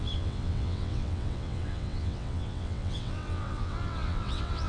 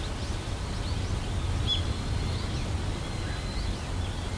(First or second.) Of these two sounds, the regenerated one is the first